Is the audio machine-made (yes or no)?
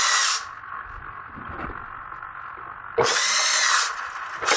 no